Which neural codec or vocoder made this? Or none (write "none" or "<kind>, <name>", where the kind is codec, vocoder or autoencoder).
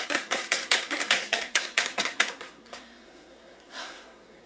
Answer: codec, SNAC